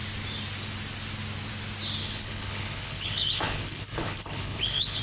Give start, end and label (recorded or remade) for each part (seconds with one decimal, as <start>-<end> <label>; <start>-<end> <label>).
0.0-2.0 recorded; 2.0-5.0 remade